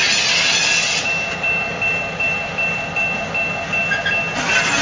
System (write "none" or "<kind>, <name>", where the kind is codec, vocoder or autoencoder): none